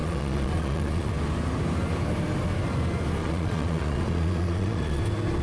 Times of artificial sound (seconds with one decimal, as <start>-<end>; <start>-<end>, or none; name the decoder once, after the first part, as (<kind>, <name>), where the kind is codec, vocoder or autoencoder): 0.0-1.1 (vocoder, Vocos); 3.2-5.0